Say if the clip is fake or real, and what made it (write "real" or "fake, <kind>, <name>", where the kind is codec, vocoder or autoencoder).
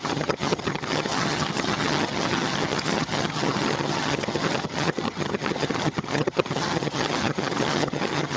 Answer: fake, vocoder, HiFi-GAN